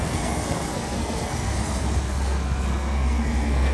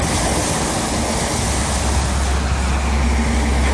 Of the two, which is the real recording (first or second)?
second